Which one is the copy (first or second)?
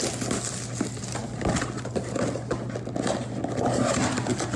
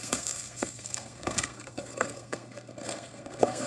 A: second